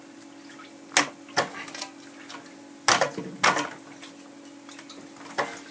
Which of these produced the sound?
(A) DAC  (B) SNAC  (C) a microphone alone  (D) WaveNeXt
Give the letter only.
C